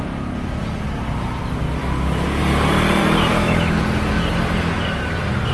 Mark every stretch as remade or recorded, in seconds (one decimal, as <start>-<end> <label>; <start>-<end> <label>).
0.0-1.8 recorded; 1.8-2.4 remade; 2.4-3.0 recorded; 3.0-3.8 remade; 3.8-5.5 recorded